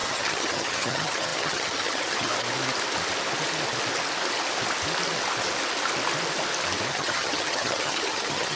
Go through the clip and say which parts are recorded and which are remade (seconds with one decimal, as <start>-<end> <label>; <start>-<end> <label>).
0.0-2.3 remade; 2.3-6.9 recorded; 6.9-8.6 remade

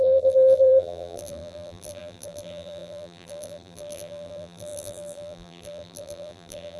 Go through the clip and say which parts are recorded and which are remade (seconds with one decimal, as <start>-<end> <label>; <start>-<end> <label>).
0.0-6.8 remade

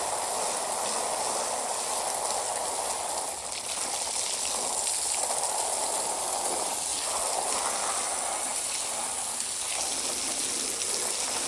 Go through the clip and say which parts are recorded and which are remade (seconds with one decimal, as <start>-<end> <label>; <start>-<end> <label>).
0.0-11.5 recorded

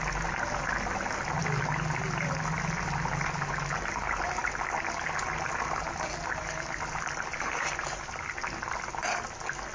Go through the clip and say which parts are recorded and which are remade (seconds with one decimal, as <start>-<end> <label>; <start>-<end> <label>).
0.0-9.7 recorded

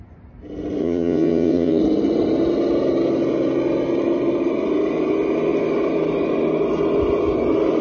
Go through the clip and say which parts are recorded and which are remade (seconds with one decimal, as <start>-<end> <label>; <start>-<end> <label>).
0.0-0.8 recorded; 0.8-1.8 remade; 1.8-7.8 recorded